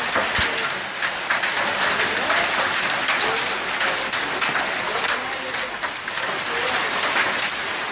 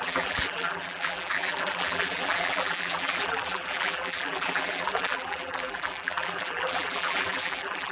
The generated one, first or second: second